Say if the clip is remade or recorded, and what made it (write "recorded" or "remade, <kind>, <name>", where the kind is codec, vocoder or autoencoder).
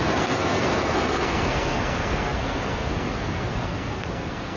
remade, codec, SNAC